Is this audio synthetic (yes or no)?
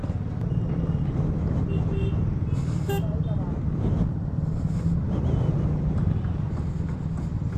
no